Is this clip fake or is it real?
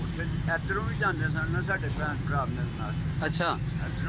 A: real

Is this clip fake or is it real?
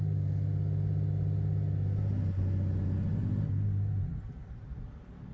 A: real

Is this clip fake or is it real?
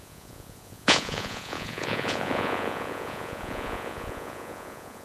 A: fake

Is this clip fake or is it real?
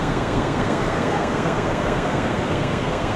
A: fake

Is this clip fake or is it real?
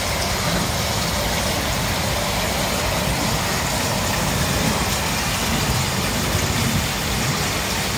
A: real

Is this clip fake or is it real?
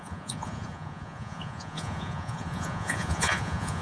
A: fake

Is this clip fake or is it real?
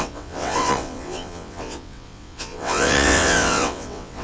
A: fake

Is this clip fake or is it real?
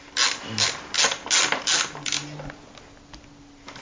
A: real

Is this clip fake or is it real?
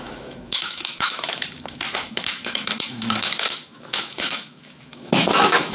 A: fake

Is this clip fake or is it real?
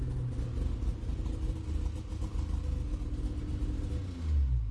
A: real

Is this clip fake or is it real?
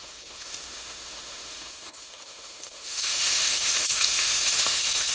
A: fake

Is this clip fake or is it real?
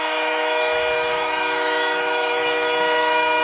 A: fake